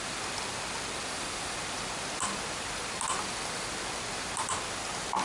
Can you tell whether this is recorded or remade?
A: recorded